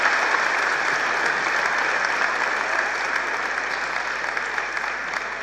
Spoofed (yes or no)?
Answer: no